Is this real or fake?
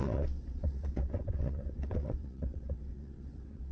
fake